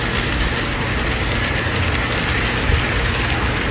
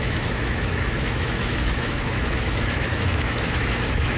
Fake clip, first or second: second